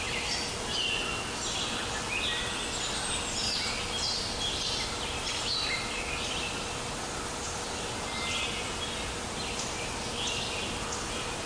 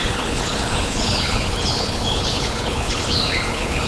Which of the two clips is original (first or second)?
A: first